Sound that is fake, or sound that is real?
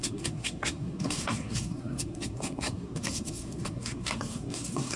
fake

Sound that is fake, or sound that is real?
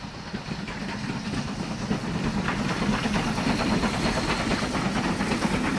real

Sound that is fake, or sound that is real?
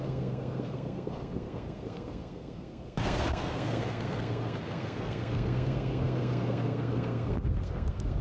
fake